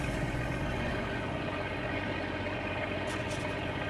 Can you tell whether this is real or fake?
fake